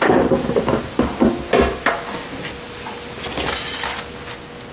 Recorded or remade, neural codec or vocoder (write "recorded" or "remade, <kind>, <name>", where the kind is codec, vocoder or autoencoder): recorded